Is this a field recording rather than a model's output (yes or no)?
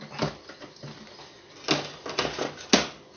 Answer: yes